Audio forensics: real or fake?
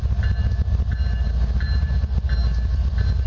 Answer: real